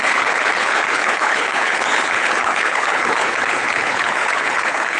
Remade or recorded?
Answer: remade